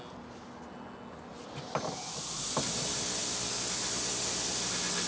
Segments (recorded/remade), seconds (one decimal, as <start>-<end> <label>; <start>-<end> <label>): 0.0-5.1 recorded